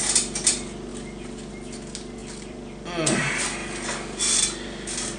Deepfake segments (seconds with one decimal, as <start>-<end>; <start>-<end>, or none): 0.9-1.5; 2.2-3.2